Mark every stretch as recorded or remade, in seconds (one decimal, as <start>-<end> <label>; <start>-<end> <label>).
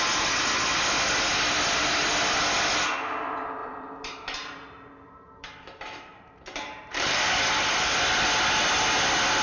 0.0-3.6 recorded; 3.6-7.3 remade; 7.3-9.4 recorded